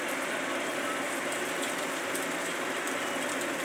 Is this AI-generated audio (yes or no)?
no